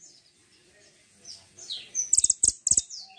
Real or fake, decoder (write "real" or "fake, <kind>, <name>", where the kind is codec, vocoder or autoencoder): real